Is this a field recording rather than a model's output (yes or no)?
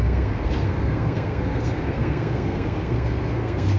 no